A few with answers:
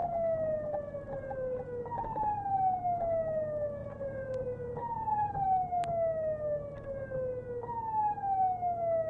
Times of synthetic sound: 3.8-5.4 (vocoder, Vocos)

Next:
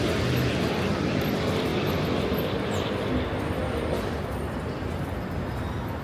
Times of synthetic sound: 1.7-2.8 (vocoder, BigVGAN v2)